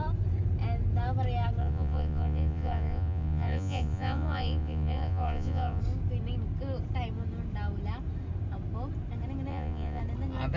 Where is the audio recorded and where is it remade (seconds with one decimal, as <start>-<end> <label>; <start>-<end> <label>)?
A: 0.0-1.6 recorded; 1.6-5.8 remade; 5.8-9.5 recorded; 9.5-10.0 remade; 10.0-10.6 recorded